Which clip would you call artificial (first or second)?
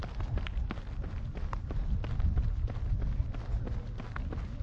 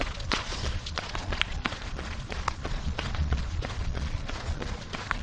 second